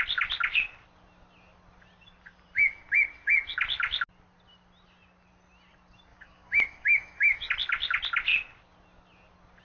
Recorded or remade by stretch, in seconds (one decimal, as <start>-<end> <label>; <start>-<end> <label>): 0.0-6.1 recorded; 6.1-7.5 remade; 7.5-9.6 recorded